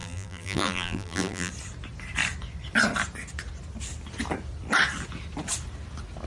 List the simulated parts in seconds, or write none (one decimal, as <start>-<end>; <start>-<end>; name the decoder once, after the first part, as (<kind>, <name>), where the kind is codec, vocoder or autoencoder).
0.0-1.5 (vocoder, BigVGAN v2)

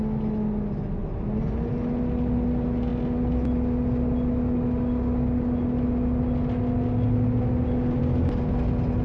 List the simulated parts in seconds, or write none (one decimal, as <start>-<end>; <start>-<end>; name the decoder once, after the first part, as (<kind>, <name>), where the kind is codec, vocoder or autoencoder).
none

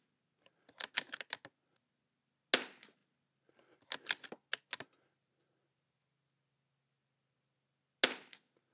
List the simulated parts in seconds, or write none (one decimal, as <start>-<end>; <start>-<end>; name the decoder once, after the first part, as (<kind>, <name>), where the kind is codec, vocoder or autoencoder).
none